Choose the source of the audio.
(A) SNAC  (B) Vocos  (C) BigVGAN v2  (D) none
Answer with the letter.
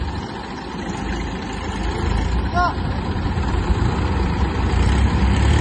D